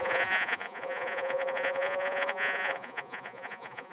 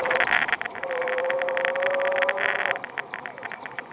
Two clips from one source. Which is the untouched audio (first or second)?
second